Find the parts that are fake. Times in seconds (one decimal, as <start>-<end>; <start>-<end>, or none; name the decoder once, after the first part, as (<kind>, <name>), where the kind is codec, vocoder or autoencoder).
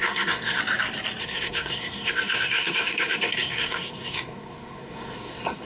0.0-0.6 (codec, SNAC); 1.2-5.6